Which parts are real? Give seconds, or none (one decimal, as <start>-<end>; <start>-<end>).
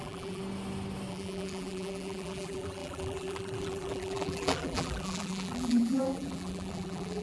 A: 0.4-1.1